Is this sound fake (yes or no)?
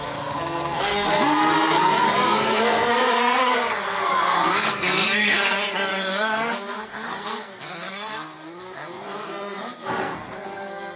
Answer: yes